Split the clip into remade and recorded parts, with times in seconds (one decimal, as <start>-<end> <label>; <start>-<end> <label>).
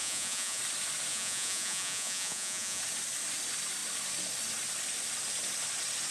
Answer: 0.0-0.6 remade; 0.6-1.1 recorded; 1.1-2.8 remade; 2.8-6.1 recorded